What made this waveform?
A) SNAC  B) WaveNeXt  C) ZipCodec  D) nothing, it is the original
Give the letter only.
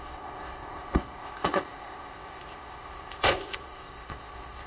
C